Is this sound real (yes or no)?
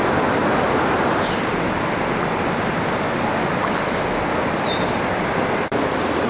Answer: yes